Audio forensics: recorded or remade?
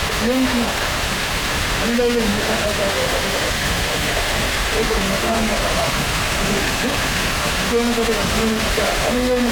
remade